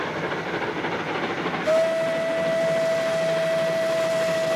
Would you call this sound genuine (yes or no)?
yes